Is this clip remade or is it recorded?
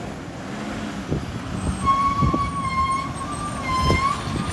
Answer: recorded